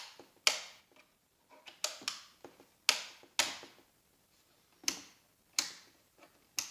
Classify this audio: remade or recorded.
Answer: recorded